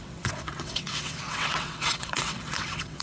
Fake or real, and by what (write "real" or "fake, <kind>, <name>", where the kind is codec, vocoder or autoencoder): fake, vocoder, WaveNeXt